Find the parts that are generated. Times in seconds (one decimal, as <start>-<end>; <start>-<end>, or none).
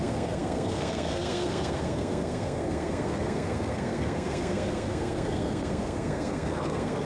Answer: 0.0-7.1